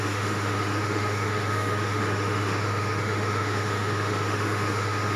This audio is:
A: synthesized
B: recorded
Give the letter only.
A